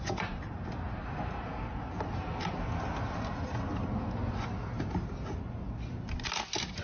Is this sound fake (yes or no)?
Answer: no